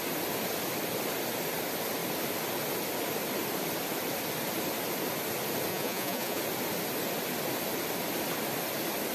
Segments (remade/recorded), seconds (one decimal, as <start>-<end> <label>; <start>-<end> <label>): 0.0-5.7 recorded; 5.7-6.4 remade; 6.4-9.1 recorded